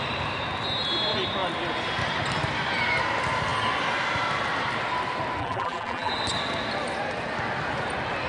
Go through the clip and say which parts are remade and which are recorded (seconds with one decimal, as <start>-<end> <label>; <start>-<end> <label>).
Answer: 0.0-5.4 recorded; 5.4-6.1 remade; 6.1-8.3 recorded